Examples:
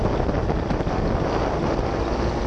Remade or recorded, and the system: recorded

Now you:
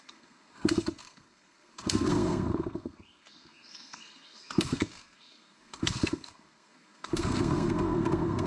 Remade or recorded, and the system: remade, codec, SNAC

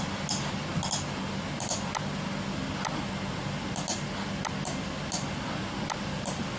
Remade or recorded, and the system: recorded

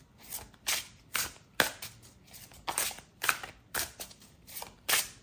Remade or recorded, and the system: recorded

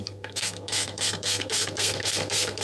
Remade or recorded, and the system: remade, codec, SNAC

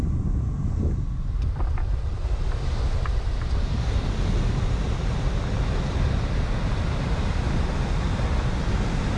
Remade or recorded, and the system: recorded